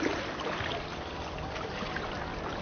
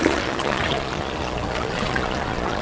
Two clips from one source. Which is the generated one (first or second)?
second